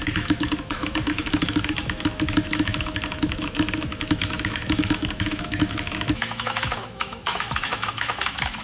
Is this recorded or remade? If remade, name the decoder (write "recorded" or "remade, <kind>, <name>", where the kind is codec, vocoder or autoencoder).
remade, autoencoder, DAC-VAE